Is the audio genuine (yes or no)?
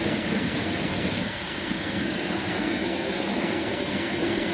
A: no